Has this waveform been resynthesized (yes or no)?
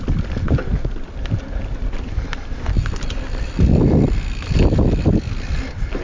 no